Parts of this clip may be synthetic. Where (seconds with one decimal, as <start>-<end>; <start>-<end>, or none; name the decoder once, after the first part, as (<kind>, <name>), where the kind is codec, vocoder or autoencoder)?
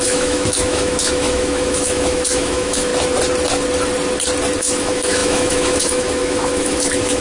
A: 0.0-2.9 (autoencoder, DAC-VAE); 4.6-7.2